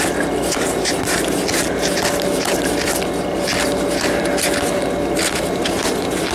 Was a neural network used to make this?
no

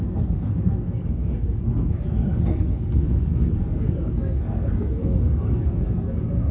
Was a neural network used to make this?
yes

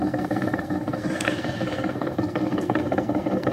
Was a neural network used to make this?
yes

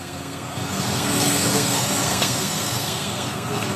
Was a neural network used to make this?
yes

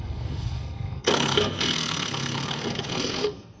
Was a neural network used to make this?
yes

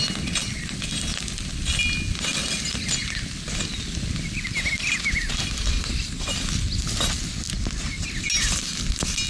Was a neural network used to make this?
no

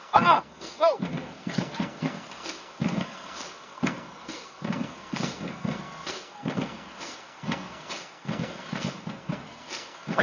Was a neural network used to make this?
yes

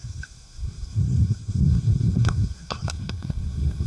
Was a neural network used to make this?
yes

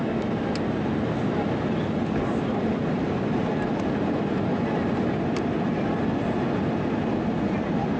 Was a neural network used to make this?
no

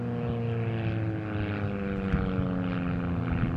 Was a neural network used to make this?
no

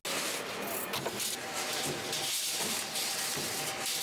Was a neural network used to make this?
no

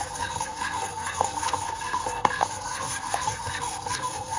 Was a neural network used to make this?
yes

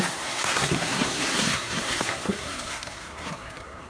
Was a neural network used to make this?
yes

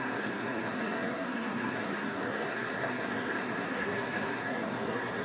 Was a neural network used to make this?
yes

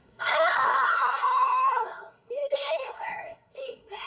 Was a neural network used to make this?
yes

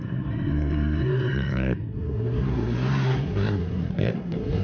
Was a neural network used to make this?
yes